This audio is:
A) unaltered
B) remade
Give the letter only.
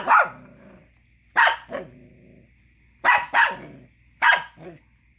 A